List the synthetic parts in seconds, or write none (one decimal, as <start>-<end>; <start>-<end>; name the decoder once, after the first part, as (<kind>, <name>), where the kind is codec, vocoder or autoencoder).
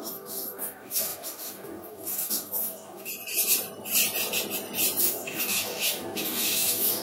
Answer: 0.0-3.1 (codec, DAC); 5.0-7.0